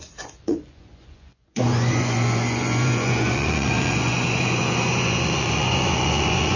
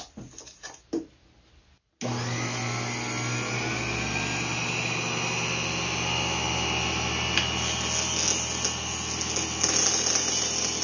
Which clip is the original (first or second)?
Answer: second